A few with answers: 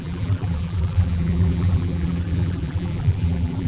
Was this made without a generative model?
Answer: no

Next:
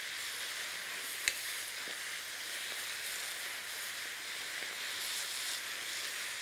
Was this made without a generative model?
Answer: yes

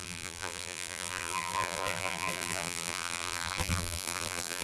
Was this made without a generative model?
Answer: no